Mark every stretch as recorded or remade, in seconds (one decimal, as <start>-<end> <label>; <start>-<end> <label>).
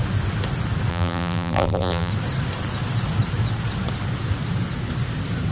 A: 0.0-0.9 recorded; 0.9-2.1 remade; 2.1-5.5 recorded